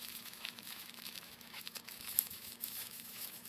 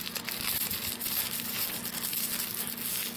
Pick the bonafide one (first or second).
second